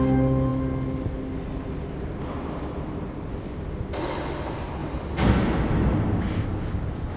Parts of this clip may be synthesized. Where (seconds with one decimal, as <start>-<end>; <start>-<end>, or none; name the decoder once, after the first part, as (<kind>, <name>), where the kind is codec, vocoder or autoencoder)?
none

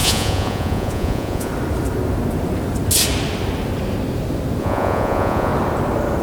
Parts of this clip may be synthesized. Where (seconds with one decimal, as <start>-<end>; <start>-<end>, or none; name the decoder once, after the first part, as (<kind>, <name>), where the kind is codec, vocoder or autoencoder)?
0.0-1.5 (vocoder, Vocos); 4.6-5.5

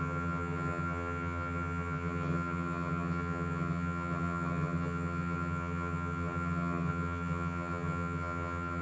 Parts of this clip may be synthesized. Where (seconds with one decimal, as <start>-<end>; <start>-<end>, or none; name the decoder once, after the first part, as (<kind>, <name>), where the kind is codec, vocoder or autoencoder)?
0.0-8.8 (vocoder, HiFi-GAN)

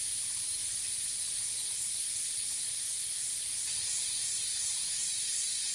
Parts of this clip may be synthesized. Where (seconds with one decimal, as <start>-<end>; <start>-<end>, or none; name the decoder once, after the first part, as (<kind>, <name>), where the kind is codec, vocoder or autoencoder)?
0.6-1.5 (vocoder, BigVGAN v2); 1.9-4.8